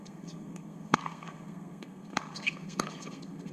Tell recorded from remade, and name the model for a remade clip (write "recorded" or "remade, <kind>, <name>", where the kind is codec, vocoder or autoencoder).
remade, codec, SNAC